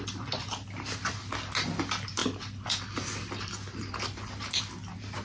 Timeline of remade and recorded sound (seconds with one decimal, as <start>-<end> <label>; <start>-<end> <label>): 0.0-5.2 recorded